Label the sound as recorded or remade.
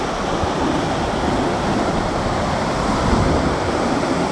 recorded